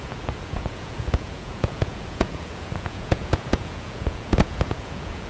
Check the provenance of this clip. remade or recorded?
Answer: remade